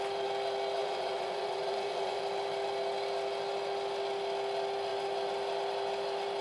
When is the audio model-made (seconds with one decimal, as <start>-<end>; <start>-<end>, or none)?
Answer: 0.8-2.2